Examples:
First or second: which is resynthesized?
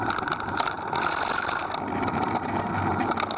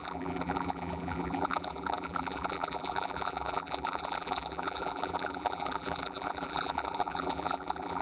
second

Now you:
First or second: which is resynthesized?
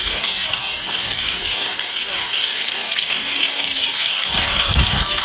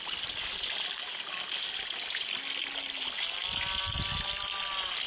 first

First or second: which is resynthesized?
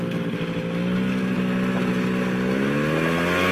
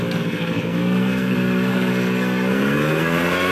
second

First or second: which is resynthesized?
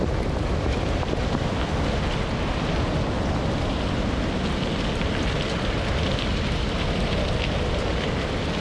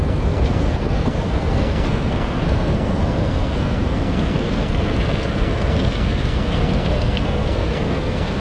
second